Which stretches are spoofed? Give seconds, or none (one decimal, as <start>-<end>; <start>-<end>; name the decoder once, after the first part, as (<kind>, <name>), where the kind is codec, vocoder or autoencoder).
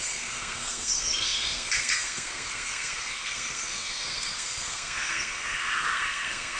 0.0-6.6 (codec, SNAC)